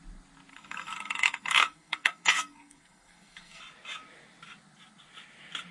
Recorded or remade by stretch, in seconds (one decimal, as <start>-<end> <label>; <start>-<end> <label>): 0.0-0.5 recorded; 0.5-3.6 remade; 3.6-5.7 recorded